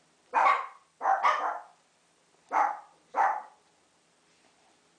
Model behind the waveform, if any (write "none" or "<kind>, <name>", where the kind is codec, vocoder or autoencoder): none